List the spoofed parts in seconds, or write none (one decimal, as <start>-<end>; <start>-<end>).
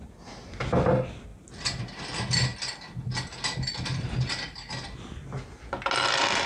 none